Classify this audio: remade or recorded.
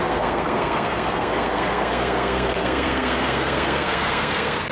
remade